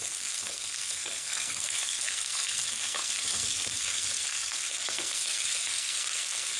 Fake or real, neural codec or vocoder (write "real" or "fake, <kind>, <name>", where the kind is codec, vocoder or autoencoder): fake, codec, SNAC